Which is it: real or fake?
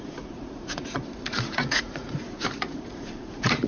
fake